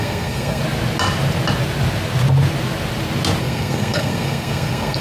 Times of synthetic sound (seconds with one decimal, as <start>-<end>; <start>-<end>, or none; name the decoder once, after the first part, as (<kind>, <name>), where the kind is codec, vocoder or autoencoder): 0.0-0.6 (codec, SNAC); 3.4-5.0